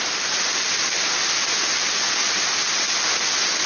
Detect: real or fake real